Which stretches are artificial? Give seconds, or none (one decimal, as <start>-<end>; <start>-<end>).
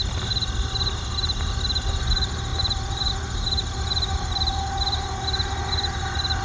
none